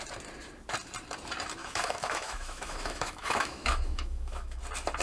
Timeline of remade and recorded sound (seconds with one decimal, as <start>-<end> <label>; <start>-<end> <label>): 0.0-1.6 recorded; 1.6-4.6 remade; 4.6-5.0 recorded